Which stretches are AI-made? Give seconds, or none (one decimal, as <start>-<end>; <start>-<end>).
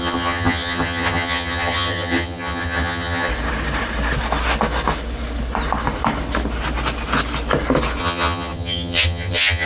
0.0-3.3; 8.0-9.7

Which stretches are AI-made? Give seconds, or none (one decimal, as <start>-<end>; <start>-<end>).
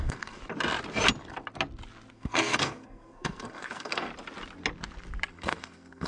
0.0-0.4; 2.1-4.1; 5.3-6.1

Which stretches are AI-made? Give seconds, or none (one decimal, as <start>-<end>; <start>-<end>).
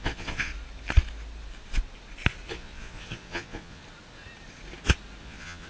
0.0-0.5; 2.5-3.8; 5.2-5.7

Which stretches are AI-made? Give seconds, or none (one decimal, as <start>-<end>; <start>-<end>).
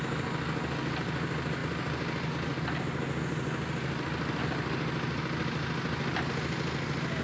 none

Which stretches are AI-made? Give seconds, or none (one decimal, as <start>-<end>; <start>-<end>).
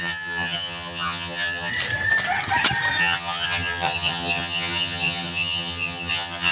0.0-1.7; 3.0-6.5